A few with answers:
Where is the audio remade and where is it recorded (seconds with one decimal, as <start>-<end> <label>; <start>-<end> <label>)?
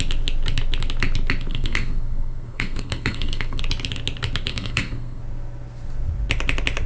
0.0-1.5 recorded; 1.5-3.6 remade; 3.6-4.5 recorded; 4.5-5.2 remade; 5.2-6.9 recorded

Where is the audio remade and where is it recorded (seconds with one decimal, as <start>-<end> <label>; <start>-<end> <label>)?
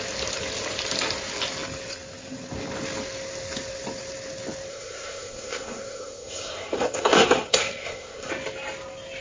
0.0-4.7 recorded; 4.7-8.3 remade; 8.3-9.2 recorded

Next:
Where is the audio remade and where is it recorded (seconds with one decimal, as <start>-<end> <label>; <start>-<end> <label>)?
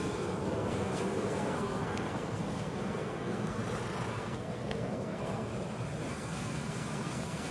0.0-3.6 remade; 3.6-4.1 recorded; 4.1-5.5 remade; 5.5-6.1 recorded; 6.1-7.5 remade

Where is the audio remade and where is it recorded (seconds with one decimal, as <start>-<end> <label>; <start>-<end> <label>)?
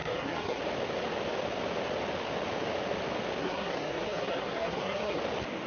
0.0-0.6 remade; 0.6-3.4 recorded; 3.4-5.2 remade; 5.2-5.7 recorded